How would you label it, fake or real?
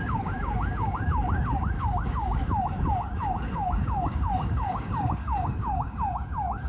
fake